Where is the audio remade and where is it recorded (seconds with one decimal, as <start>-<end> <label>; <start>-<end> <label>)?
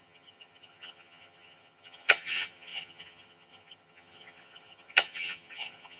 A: 0.0-6.0 remade